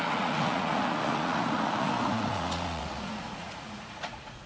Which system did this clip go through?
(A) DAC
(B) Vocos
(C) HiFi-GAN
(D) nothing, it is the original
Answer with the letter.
B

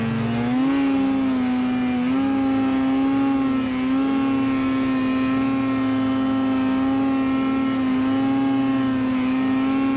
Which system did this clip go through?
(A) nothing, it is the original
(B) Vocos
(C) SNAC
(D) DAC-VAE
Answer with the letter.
A